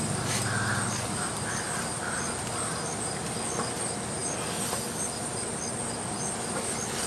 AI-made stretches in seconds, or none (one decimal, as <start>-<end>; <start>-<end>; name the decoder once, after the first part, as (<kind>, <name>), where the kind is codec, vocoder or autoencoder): none